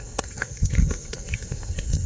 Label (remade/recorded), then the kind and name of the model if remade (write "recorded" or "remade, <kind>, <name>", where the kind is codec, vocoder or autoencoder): remade, codec, SNAC